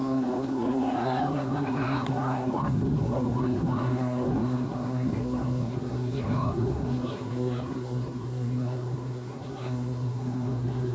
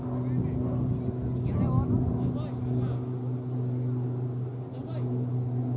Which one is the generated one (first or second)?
first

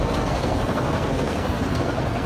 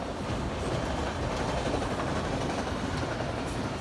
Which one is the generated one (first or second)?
first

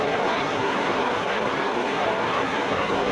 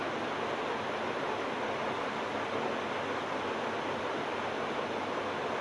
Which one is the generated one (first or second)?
first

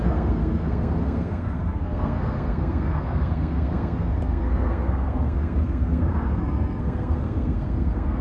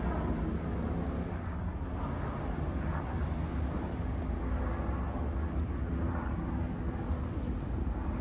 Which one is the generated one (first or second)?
first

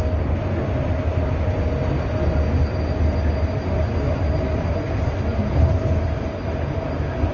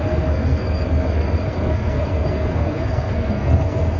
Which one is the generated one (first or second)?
second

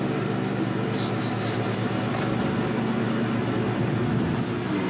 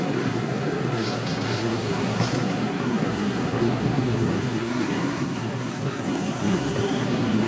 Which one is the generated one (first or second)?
second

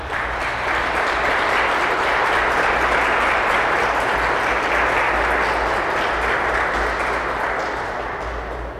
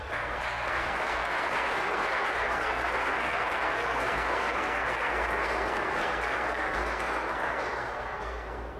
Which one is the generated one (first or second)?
second